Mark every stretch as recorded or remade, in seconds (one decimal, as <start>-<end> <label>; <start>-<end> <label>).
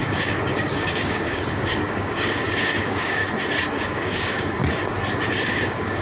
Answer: 0.0-3.2 remade; 3.2-3.7 recorded; 3.7-4.6 remade; 4.6-5.3 recorded; 5.3-6.0 remade